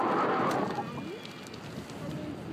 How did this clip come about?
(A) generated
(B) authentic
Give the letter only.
B